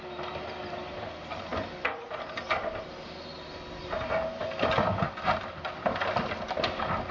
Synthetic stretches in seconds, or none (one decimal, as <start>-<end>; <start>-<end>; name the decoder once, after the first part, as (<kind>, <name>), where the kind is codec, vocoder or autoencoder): none